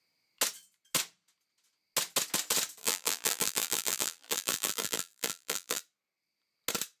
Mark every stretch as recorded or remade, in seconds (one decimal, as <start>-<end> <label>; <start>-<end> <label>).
0.0-2.8 recorded; 2.8-5.8 remade; 5.8-7.0 recorded

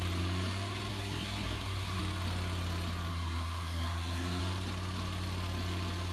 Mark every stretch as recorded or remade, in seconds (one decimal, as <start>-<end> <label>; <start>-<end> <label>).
0.0-0.9 recorded; 0.9-2.0 remade; 2.0-3.1 recorded; 3.1-4.4 remade; 4.4-6.1 recorded

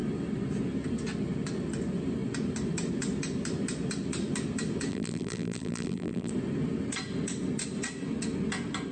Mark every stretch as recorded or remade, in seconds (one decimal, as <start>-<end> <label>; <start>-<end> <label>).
0.0-4.9 recorded; 4.9-6.3 remade; 6.3-8.9 recorded

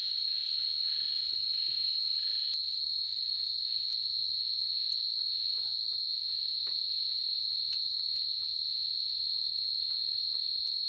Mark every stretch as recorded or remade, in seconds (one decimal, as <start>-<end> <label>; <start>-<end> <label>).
0.0-3.1 recorded; 3.1-6.2 remade; 6.2-10.9 recorded

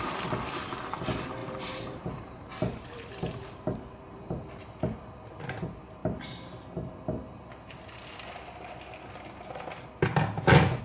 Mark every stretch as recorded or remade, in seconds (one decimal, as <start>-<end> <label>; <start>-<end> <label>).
0.0-1.4 recorded; 1.4-4.5 remade; 4.5-10.8 recorded

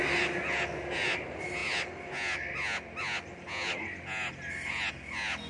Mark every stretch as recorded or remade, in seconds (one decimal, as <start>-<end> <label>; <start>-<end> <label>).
0.0-5.5 recorded

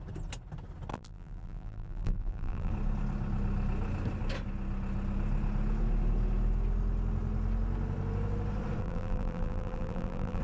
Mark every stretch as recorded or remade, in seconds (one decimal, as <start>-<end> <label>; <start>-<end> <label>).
0.0-0.9 recorded; 0.9-2.7 remade; 2.7-8.8 recorded; 8.8-10.4 remade

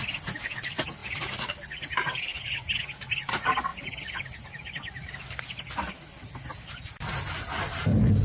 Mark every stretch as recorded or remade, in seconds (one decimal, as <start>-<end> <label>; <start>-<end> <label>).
0.0-8.2 recorded